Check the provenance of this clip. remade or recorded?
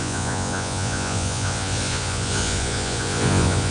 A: remade